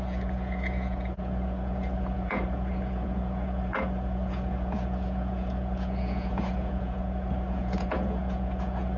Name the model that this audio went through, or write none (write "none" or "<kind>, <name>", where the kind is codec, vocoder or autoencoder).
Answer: vocoder, Vocos